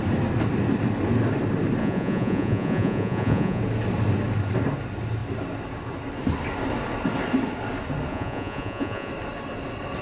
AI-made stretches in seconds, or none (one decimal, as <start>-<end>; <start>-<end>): 1.8-3.6; 8.1-9.1